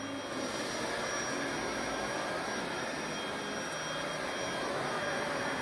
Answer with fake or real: real